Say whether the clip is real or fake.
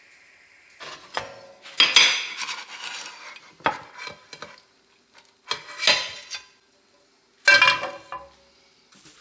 real